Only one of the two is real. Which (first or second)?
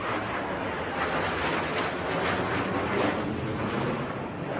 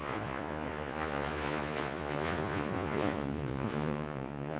first